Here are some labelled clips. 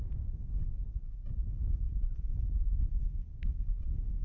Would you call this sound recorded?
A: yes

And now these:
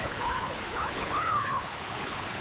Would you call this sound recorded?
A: no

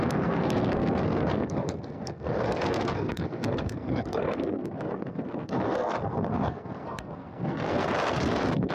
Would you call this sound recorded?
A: no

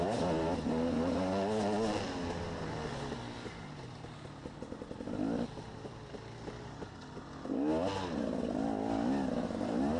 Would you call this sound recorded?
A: yes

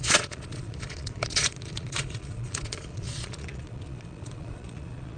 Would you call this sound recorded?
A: no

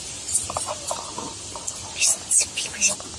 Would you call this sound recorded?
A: yes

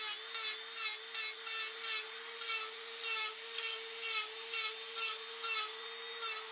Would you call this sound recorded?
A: yes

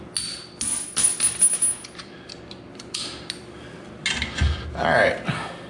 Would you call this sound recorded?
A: yes